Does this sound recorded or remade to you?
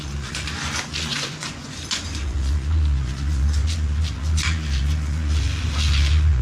remade